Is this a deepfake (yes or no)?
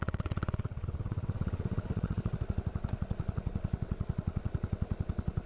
yes